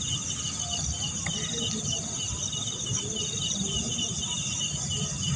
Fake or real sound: real